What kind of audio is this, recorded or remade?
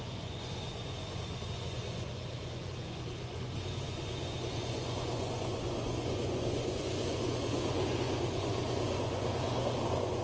remade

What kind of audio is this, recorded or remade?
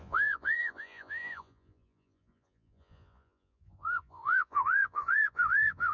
remade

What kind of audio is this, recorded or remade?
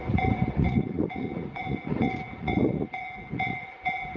remade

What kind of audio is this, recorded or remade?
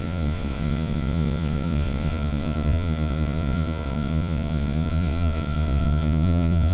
remade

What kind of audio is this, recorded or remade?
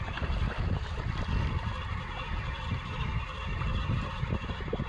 recorded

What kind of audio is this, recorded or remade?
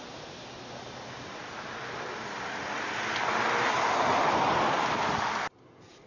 recorded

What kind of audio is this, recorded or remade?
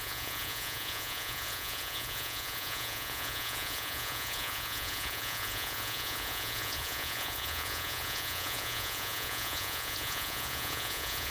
remade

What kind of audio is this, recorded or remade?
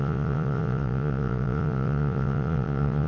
remade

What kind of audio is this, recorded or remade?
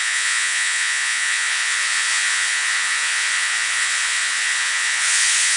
remade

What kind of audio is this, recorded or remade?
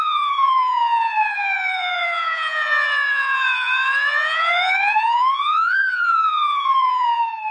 remade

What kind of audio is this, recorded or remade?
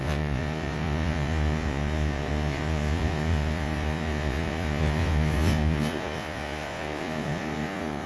remade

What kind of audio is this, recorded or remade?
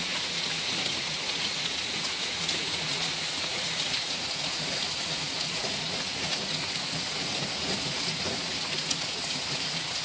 remade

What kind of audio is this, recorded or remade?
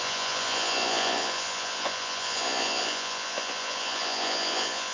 remade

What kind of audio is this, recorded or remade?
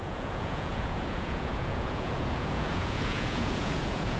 remade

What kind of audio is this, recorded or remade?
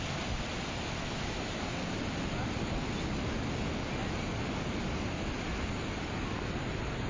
recorded